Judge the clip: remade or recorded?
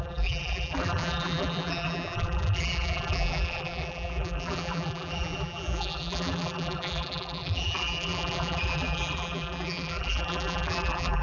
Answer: remade